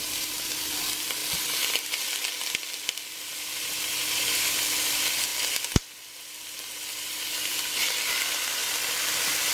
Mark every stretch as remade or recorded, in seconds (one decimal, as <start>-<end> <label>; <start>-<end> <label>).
0.0-1.2 remade; 1.2-3.4 recorded; 3.4-5.3 remade; 5.3-7.1 recorded; 7.1-9.5 remade